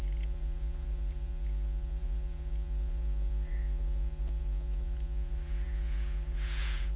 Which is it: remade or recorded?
remade